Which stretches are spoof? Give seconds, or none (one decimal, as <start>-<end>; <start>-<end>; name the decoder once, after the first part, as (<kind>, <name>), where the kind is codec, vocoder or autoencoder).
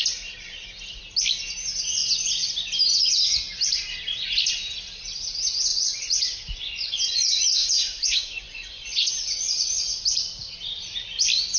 5.7-9.1 (vocoder, Vocos)